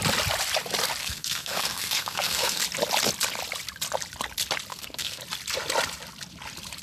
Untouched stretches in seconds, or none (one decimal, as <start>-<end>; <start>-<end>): 0.0-1.0; 2.6-4.7; 5.2-6.8